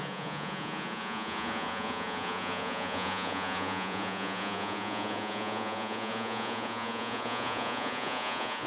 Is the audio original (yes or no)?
no